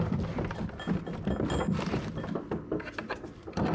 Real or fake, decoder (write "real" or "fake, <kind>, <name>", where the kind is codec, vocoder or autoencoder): real